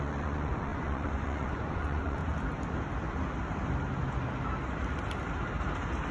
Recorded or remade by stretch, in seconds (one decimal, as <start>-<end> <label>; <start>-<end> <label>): 0.0-2.2 remade; 2.2-6.1 recorded